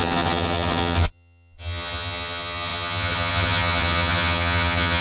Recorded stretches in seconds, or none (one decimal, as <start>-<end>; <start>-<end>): none